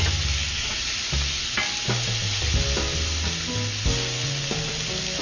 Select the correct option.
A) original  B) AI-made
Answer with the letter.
A